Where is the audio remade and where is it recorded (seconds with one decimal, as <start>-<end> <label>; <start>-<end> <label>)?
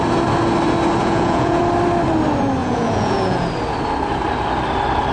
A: 0.0-1.0 recorded; 1.0-1.6 remade; 1.6-2.6 recorded; 2.6-3.5 remade; 3.5-5.1 recorded